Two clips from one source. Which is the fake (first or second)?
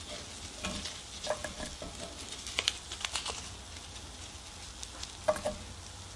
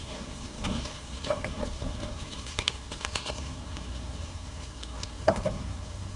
second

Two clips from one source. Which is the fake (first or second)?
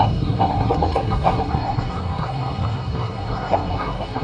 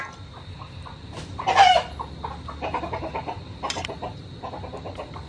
first